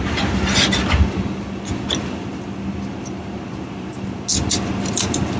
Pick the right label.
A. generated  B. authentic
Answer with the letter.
B